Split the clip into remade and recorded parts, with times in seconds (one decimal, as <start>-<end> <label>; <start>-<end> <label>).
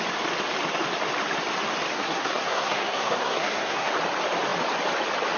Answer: 0.0-1.9 recorded; 1.9-3.9 remade; 3.9-5.4 recorded